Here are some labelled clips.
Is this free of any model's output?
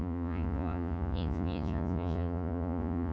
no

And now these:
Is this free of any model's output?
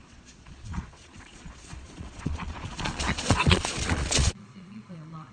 no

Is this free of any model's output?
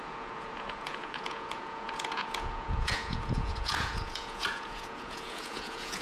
no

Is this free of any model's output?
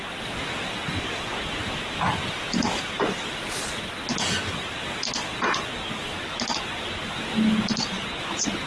yes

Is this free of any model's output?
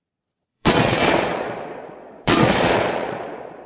no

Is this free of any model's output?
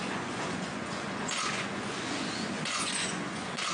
no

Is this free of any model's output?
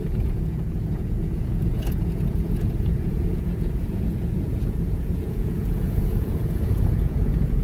no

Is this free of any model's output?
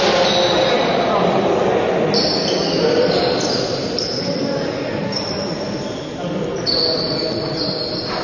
yes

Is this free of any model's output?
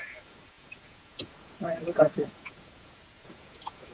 no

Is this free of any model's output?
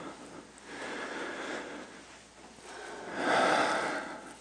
yes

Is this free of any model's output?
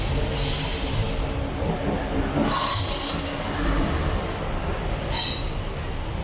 yes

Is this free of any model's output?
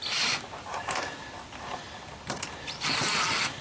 yes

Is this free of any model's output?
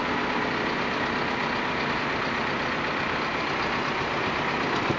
yes